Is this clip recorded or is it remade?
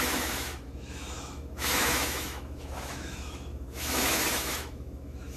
remade